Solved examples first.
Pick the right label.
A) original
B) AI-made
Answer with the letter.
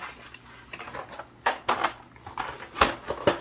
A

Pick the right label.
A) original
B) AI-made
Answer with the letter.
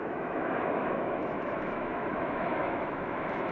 B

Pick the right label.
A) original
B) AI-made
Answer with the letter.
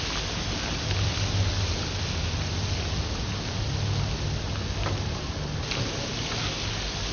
A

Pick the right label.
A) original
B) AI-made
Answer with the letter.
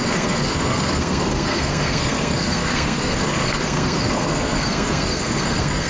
B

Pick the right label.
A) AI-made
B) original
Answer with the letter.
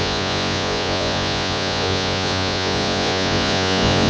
A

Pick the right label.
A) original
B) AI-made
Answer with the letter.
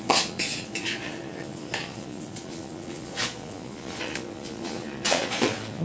B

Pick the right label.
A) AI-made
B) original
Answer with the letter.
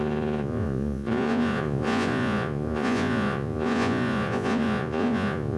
A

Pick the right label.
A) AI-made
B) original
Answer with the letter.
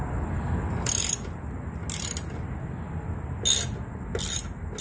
B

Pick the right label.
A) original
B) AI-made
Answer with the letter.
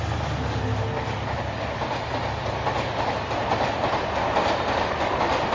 A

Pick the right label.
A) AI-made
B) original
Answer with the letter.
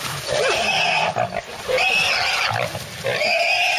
B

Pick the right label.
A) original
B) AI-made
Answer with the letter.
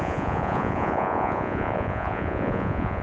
B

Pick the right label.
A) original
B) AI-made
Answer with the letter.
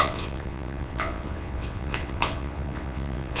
B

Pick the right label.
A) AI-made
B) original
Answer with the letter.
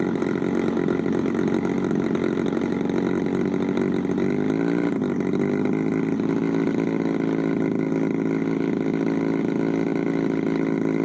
B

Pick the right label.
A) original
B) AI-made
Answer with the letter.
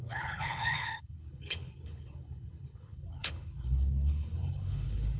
B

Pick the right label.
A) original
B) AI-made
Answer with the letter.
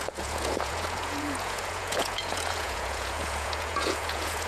B